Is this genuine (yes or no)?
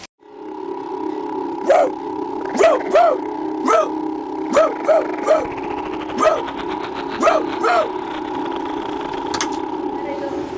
yes